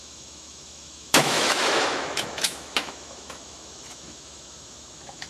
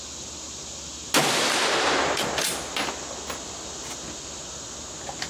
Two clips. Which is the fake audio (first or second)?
first